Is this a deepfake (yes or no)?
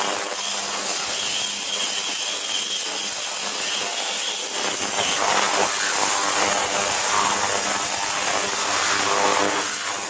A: no